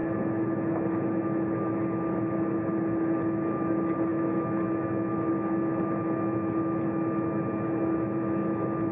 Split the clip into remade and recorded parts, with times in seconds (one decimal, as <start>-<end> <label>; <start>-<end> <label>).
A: 0.0-8.9 recorded